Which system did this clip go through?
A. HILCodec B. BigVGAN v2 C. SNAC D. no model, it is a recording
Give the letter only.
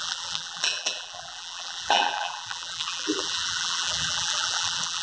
B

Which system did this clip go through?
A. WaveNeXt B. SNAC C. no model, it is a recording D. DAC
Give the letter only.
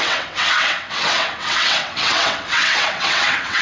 A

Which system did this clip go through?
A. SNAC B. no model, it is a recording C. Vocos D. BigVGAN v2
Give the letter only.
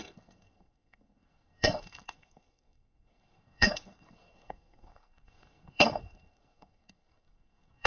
A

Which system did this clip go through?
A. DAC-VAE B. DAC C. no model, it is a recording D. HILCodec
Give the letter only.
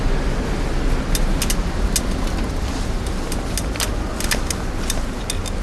C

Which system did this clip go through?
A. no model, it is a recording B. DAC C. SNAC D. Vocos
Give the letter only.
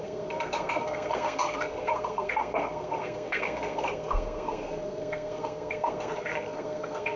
C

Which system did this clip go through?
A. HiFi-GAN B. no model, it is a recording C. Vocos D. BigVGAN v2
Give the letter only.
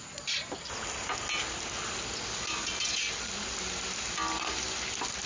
B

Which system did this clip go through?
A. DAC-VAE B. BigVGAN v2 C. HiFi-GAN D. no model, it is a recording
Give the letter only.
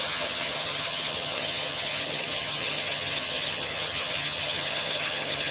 C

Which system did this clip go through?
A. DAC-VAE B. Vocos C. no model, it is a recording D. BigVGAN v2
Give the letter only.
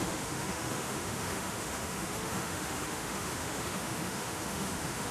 A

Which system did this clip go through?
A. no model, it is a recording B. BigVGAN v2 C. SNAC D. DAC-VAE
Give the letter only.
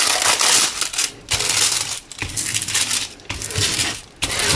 A